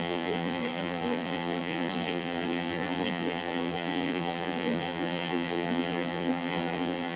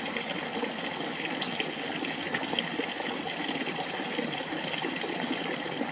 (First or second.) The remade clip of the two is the first